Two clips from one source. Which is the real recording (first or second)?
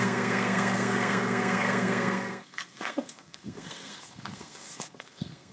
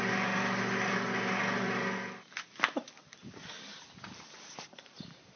second